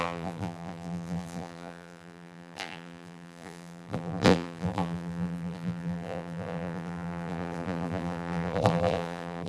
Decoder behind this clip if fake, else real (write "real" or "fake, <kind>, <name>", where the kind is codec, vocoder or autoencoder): fake, vocoder, BigVGAN v2